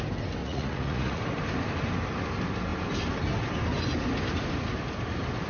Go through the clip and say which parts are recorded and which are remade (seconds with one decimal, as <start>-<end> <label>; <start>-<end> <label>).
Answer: 0.0-0.4 recorded; 0.4-1.2 remade; 1.2-5.5 recorded